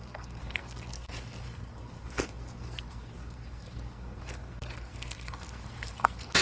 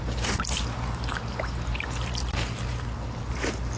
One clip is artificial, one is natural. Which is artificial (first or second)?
first